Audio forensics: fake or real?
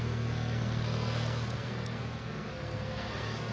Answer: fake